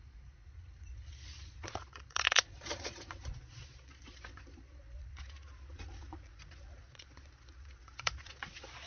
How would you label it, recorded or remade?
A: remade